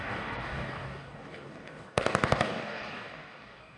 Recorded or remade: remade